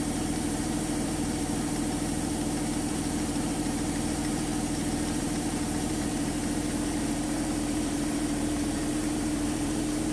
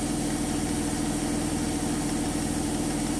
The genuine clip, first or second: second